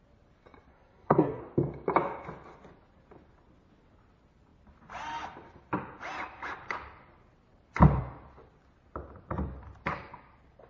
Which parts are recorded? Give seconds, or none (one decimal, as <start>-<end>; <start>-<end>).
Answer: 0.0-0.7; 1.4-10.7